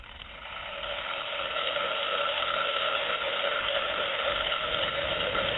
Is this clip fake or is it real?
fake